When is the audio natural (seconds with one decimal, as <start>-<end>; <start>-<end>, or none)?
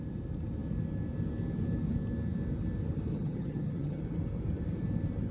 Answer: 0.0-3.1; 4.0-5.3